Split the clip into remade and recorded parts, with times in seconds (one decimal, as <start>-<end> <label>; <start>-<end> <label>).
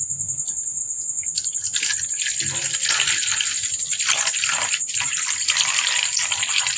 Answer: 0.0-6.8 recorded